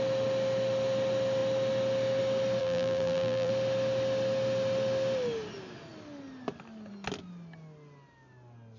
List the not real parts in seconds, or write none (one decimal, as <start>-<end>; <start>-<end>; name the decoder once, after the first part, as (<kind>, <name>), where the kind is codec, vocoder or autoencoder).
2.6-3.5 (vocoder, BigVGAN v2)

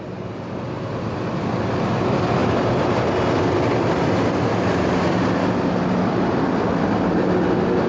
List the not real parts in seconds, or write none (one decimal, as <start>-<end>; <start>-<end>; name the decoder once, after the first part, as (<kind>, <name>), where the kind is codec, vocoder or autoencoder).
2.4-3.1 (vocoder, BigVGAN v2)